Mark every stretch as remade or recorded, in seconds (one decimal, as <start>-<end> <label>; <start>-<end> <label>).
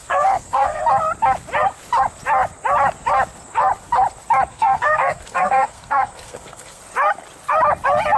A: 0.0-0.8 remade; 0.8-4.5 recorded; 4.5-6.8 remade; 6.8-8.2 recorded